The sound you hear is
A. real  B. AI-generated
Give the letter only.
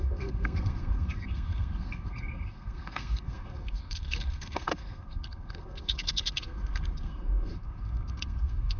B